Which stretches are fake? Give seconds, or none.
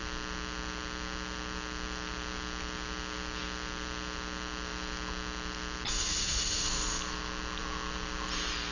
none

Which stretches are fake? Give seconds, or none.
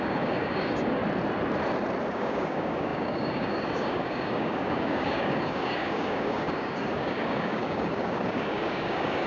0.0-1.0 (codec, DAC); 2.1-9.3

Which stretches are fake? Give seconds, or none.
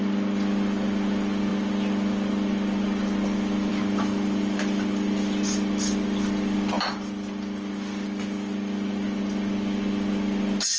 none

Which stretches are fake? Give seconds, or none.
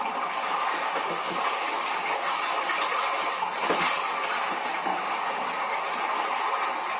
0.4-2.4 (codec, DAC); 4.9-5.8